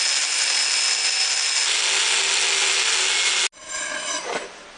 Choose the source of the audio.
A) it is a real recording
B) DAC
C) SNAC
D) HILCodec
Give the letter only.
A